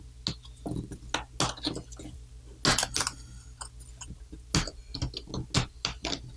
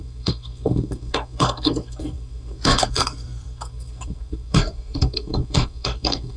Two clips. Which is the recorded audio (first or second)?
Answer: first